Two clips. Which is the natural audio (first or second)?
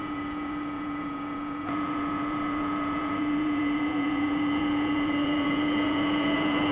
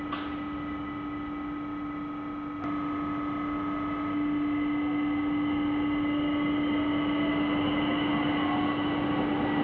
second